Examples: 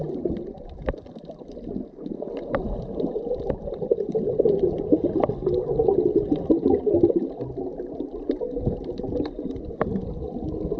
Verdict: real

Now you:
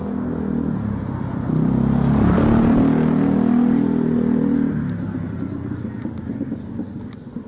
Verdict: real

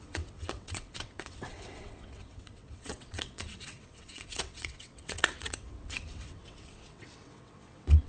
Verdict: fake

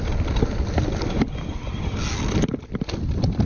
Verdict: real